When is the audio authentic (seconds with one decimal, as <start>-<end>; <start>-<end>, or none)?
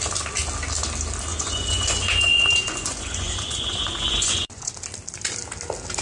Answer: 0.0-1.3; 4.7-6.0